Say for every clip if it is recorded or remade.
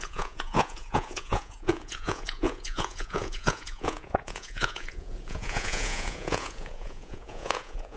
remade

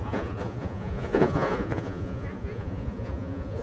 remade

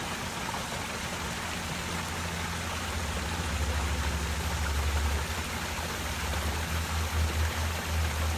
recorded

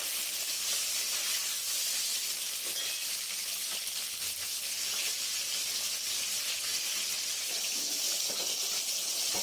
recorded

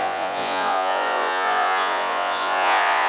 remade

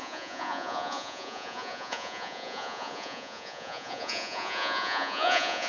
remade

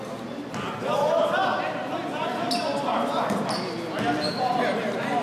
recorded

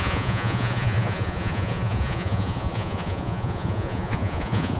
remade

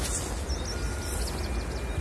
recorded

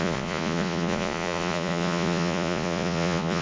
remade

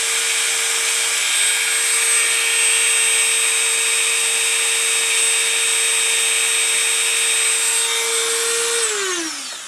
recorded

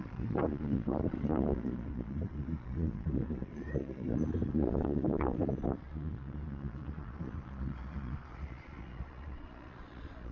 remade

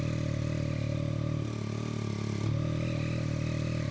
recorded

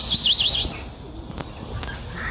recorded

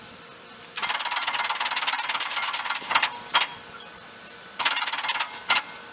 recorded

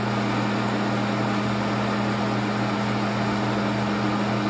recorded